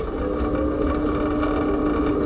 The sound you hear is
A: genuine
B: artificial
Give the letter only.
A